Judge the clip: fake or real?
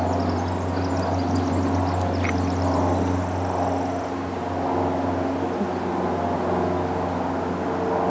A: real